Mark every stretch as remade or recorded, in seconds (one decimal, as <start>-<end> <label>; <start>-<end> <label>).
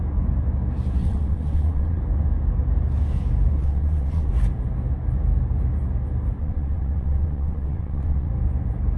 0.0-1.0 recorded; 1.0-2.0 remade; 2.0-3.6 recorded; 3.6-4.3 remade; 4.3-6.4 recorded; 6.4-8.3 remade; 8.3-9.0 recorded